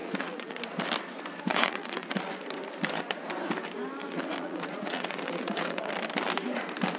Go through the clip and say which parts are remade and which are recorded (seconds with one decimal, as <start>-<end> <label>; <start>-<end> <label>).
0.0-0.6 remade; 0.6-1.5 recorded; 1.5-2.2 remade; 2.2-4.0 recorded; 4.0-5.9 remade; 5.9-7.0 recorded